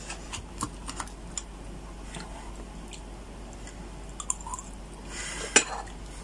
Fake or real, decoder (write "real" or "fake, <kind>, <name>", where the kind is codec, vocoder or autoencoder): real